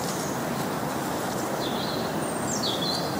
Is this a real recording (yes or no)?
yes